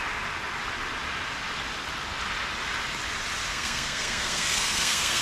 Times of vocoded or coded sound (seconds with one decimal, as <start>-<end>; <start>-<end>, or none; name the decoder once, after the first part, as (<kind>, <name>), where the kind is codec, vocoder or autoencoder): 3.5-5.2 (codec, SNAC)